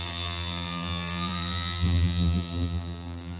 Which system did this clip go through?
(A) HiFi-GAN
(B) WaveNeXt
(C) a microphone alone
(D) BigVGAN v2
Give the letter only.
D